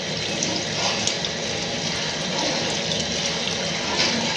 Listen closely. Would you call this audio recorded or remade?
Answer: recorded